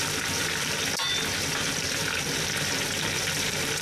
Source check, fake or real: fake